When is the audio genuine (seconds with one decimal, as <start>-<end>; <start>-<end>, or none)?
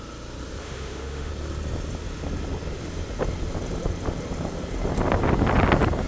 0.0-0.6; 1.3-6.1